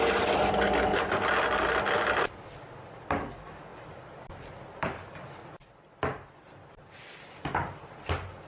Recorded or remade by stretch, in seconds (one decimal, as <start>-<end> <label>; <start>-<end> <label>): 0.0-8.5 recorded